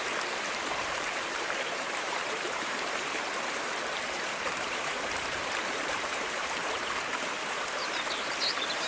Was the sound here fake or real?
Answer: fake